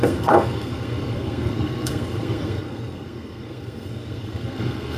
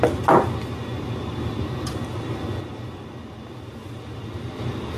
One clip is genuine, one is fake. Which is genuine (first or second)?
second